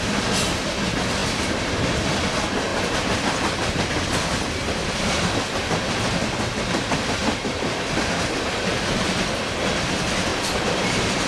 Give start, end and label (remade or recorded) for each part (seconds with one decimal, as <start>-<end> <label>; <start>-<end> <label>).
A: 0.0-1.2 recorded; 1.2-1.8 remade; 1.8-2.7 recorded; 2.7-5.2 remade; 5.2-7.2 recorded; 7.2-7.8 remade; 7.8-10.3 recorded; 10.3-11.3 remade